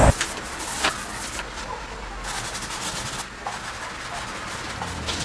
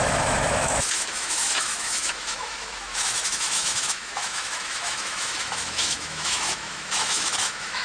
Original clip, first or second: first